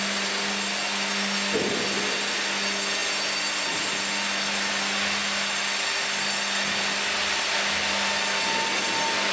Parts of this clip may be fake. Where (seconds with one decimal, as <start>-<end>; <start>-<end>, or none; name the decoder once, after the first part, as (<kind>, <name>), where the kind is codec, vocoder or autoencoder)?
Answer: none